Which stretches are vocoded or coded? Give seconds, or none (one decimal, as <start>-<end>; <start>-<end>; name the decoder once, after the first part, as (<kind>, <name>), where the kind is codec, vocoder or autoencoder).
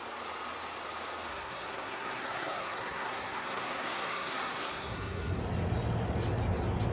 1.3-5.4 (codec, SNAC)